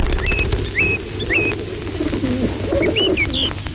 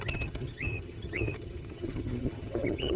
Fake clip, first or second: second